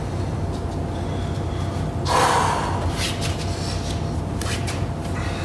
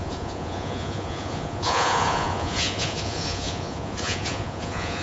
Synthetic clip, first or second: second